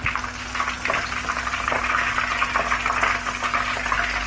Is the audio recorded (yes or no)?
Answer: yes